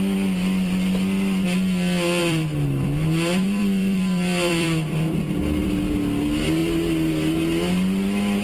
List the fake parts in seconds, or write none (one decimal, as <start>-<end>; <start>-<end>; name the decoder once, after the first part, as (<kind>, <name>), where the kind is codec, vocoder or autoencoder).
2.2-5.8 (vocoder, BigVGAN v2)